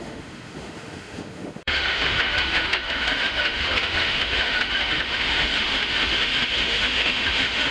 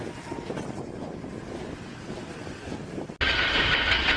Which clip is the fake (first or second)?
first